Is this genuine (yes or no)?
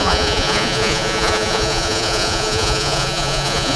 no